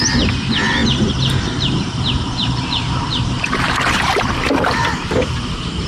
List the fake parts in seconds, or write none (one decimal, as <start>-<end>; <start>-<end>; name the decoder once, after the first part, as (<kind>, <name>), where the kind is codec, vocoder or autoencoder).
0.8-4.3 (vocoder, BigVGAN v2)